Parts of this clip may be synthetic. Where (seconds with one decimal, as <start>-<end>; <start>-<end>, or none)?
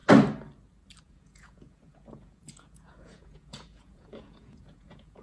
1.0-5.2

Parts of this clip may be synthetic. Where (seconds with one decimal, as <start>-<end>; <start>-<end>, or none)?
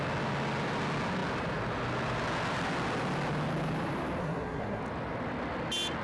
4.2-4.8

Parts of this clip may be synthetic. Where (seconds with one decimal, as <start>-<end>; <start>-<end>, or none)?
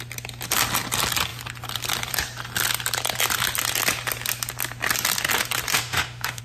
5.7-6.4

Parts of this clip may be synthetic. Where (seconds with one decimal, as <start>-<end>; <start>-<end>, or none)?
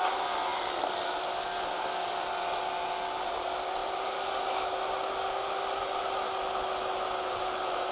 none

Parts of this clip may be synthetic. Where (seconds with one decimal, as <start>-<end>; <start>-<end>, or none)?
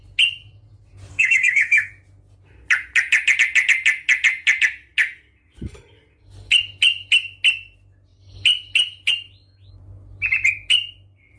1.1-1.9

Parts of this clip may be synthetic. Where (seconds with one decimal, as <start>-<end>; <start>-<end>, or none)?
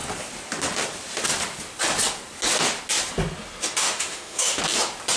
3.8-4.6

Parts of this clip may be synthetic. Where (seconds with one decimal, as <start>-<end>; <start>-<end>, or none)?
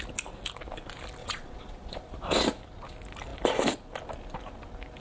1.2-2.0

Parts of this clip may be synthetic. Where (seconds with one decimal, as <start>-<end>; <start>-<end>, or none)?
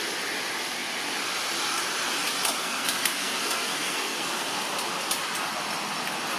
2.6-4.6